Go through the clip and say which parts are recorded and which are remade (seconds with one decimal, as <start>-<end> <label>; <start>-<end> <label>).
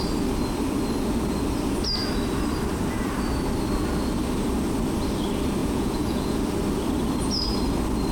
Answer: 0.0-5.6 recorded; 5.6-6.4 remade; 6.4-8.1 recorded